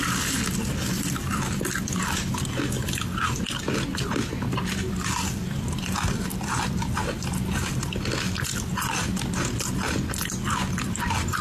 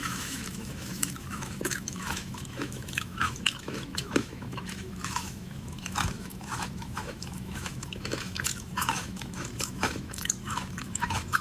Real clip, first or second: first